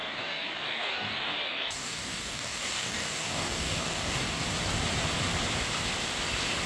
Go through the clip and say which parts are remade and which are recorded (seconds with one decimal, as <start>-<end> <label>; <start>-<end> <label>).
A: 0.0-4.4 remade; 4.4-6.7 recorded